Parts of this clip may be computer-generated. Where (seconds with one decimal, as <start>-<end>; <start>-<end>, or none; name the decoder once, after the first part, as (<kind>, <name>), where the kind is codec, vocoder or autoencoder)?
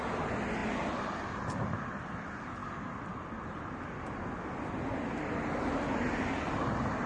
none